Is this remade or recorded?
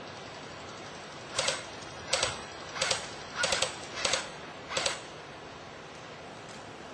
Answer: recorded